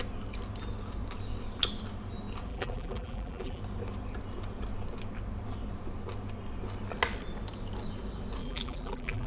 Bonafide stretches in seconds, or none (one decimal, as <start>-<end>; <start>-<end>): 0.0-2.5; 3.6-8.4